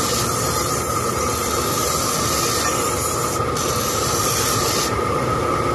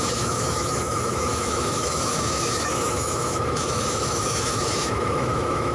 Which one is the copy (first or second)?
second